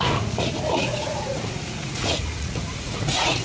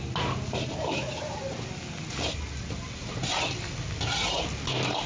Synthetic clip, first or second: first